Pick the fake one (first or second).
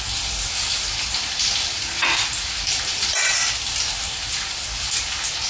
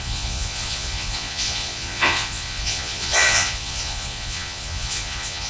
second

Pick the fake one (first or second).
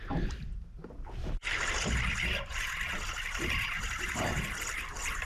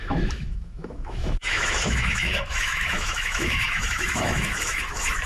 second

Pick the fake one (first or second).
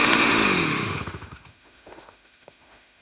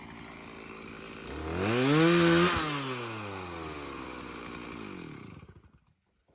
first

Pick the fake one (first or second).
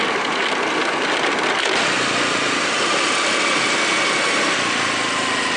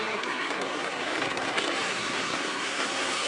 second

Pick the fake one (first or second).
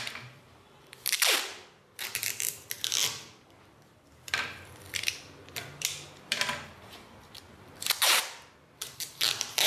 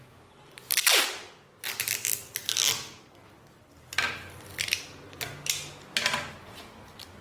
first